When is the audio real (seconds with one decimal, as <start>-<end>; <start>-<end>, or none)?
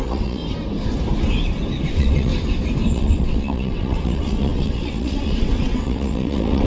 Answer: 0.4-1.9; 2.3-2.9